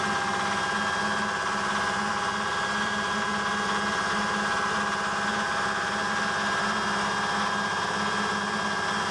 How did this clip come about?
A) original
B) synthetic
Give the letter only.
A